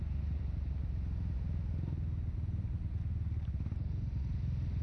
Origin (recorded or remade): recorded